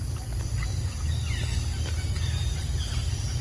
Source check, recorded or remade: recorded